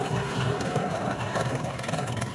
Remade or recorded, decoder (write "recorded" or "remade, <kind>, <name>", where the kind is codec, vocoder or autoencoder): remade, codec, SNAC